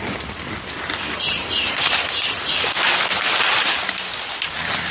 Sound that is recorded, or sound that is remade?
recorded